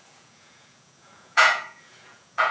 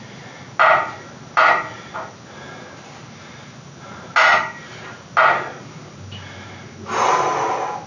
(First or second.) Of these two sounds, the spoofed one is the first